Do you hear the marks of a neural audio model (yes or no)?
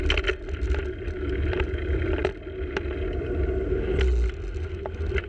no